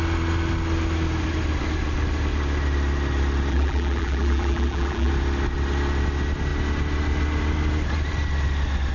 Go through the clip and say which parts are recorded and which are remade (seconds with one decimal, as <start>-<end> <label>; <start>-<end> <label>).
0.0-3.5 recorded; 3.5-5.1 remade; 5.1-8.9 recorded